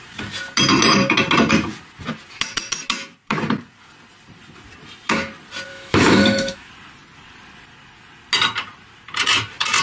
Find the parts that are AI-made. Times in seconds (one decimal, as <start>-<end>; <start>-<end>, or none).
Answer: 5.7-6.7